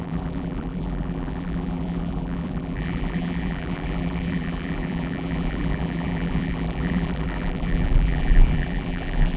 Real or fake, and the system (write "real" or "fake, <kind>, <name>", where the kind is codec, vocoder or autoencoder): fake, vocoder, BigVGAN v2